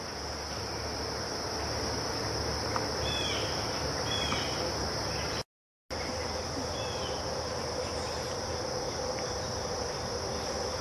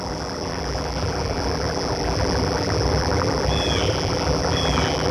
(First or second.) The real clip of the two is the first